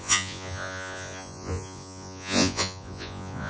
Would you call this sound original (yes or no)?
no